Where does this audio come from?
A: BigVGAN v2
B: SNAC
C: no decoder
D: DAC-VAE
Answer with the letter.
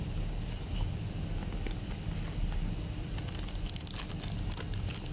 C